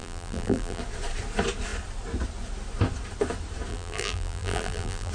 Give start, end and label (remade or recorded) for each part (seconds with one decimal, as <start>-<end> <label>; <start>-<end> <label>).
0.0-0.8 remade; 0.8-3.7 recorded; 3.7-5.1 remade